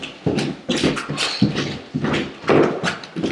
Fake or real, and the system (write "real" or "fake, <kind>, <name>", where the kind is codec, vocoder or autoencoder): real